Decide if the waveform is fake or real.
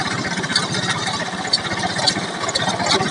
real